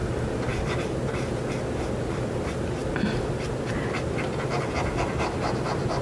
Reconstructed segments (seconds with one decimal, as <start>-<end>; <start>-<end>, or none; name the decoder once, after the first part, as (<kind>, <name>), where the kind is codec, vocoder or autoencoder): none